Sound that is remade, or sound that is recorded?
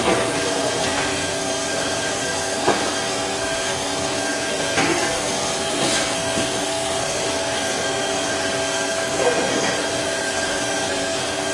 remade